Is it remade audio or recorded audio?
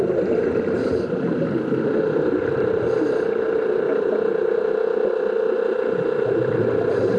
recorded